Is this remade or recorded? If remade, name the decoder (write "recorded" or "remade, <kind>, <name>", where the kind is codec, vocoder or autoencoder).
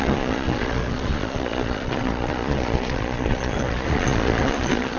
remade, vocoder, Vocos